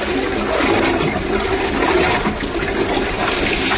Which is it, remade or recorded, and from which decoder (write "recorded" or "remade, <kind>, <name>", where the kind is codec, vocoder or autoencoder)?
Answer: recorded